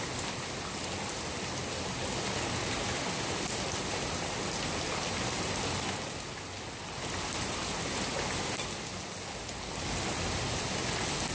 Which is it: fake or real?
real